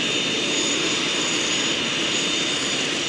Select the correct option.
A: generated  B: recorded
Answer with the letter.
B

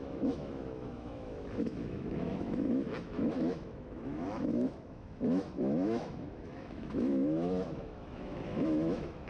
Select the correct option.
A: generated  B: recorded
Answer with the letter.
A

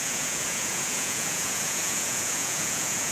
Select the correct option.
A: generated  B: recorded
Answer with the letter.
A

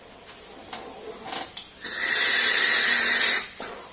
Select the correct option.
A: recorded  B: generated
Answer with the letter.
A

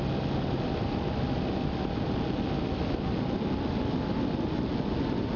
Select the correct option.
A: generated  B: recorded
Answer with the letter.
B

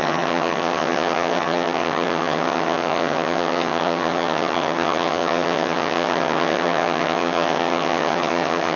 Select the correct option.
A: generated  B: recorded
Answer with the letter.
A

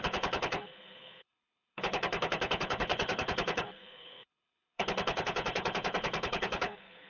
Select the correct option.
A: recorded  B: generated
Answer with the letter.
B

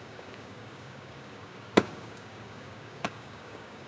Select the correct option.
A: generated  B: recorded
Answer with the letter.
A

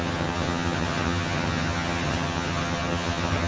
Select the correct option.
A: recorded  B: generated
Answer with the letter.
B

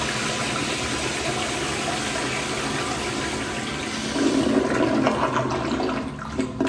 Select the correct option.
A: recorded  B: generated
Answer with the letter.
A